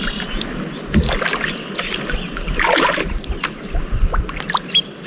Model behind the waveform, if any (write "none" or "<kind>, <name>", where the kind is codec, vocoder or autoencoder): none